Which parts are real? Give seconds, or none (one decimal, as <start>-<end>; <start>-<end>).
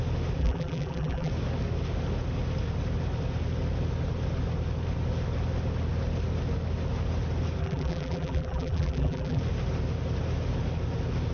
0.0-0.4; 1.3-7.6; 9.4-11.3